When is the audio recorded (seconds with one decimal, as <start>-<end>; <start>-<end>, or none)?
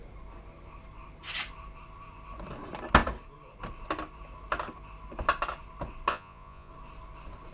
0.0-6.1; 6.7-7.5